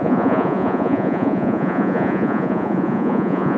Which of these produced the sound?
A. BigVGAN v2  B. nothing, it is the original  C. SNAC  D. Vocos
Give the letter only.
D